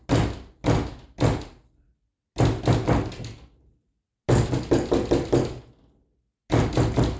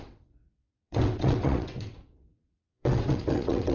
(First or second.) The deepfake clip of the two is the second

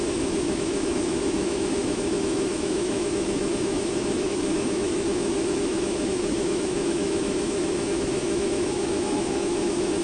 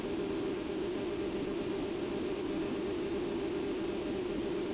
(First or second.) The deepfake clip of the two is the first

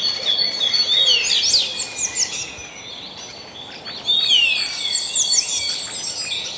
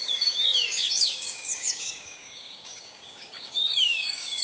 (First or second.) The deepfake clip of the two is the second